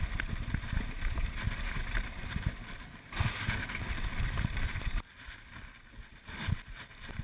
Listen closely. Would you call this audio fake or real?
real